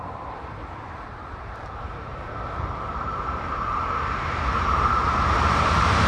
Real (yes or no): no